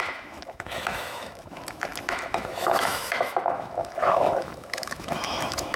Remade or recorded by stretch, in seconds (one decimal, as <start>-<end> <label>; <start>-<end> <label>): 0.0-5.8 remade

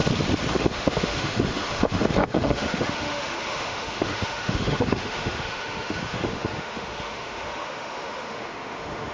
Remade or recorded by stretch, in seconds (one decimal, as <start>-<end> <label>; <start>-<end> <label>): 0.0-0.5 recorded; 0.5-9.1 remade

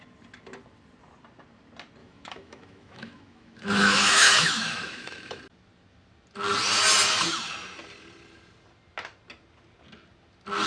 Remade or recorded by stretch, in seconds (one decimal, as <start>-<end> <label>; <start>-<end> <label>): 0.0-2.0 recorded; 2.0-5.4 remade; 5.4-10.7 recorded

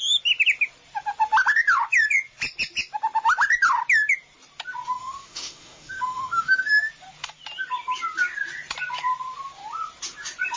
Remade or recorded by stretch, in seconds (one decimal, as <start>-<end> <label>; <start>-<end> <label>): 0.0-4.9 recorded; 4.9-6.9 remade; 6.9-10.6 recorded

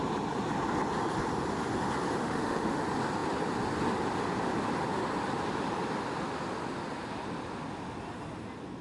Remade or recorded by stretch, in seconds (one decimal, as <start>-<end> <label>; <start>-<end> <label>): 0.0-2.2 recorded; 2.2-2.8 remade; 2.8-8.8 recorded